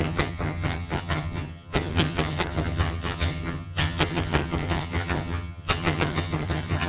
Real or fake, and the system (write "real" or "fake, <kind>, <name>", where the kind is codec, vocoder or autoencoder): fake, vocoder, HiFi-GAN